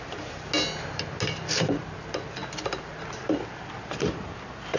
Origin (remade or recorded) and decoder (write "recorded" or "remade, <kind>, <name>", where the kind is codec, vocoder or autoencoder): recorded